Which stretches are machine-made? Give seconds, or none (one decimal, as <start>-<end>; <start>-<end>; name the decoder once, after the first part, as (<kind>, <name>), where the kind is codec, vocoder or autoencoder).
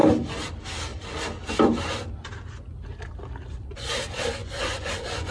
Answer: 4.4-5.3 (vocoder, Vocos)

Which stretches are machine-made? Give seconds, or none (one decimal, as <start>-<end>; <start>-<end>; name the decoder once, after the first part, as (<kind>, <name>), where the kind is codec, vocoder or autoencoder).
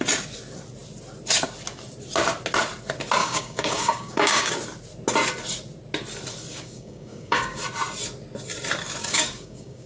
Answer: 3.2-4.5 (codec, DAC); 6.5-7.6; 9.0-9.9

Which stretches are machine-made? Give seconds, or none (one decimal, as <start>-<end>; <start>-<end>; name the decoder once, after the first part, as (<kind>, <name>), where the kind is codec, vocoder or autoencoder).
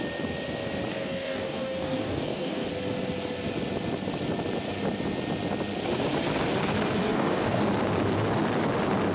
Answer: 0.9-2.7 (codec, DAC); 7.0-7.6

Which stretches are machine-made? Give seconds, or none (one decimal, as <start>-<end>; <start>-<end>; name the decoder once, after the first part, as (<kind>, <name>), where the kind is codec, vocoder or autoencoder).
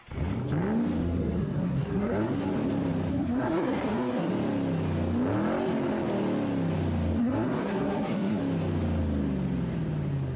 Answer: 1.0-2.5 (codec, SNAC); 3.1-4.3; 7.2-8.4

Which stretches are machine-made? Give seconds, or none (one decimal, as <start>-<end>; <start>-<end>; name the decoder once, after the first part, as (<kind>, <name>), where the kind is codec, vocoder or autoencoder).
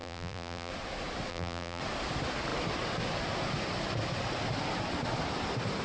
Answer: 0.0-0.7 (vocoder, BigVGAN v2); 1.3-1.8